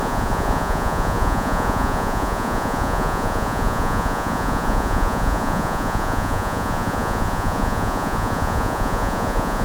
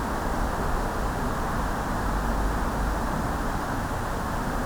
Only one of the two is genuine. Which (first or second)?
second